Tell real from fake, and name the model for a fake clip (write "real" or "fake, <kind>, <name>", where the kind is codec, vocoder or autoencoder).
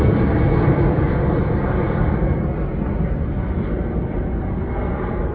real